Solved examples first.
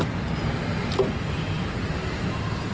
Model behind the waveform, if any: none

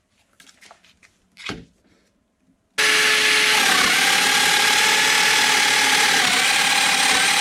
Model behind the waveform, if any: none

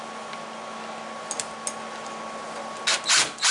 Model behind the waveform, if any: none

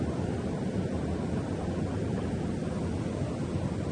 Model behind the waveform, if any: none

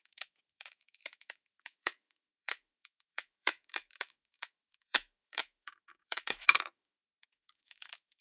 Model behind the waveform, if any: autoencoder, DAC-VAE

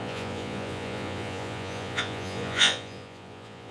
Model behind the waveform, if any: vocoder, Vocos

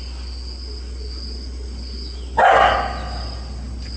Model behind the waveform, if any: none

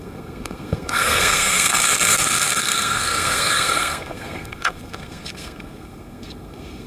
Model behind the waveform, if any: codec, SNAC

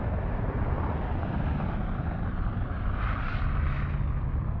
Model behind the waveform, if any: none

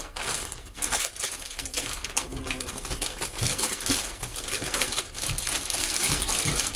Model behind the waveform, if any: codec, SNAC